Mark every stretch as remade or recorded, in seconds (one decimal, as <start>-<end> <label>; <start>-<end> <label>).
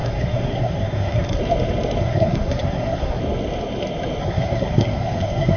0.0-1.4 remade; 1.4-2.0 recorded; 2.0-3.2 remade; 3.2-4.2 recorded; 4.2-5.6 remade